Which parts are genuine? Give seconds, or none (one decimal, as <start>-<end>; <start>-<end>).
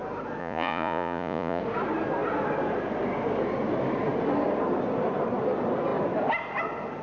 0.0-0.4; 1.6-7.0